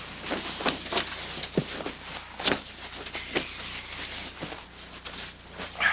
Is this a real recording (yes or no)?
yes